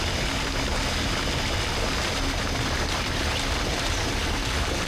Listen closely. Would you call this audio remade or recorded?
recorded